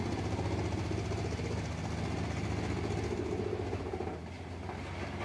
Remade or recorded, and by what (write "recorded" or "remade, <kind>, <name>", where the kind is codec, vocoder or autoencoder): recorded